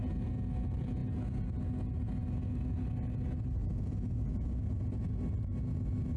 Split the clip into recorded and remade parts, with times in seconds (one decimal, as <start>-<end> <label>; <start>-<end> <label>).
0.0-3.6 recorded; 3.6-5.0 remade; 5.0-6.2 recorded